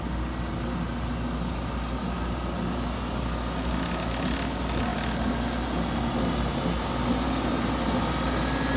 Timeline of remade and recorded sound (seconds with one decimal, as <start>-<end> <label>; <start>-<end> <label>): 0.0-8.8 recorded